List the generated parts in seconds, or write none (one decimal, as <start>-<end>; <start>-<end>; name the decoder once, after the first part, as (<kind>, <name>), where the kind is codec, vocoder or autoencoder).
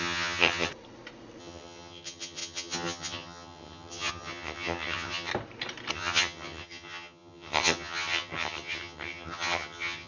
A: 0.0-0.7 (vocoder, HiFi-GAN); 1.4-5.3; 5.9-10.1